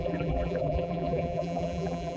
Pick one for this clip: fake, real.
fake